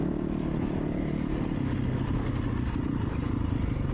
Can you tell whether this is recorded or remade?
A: recorded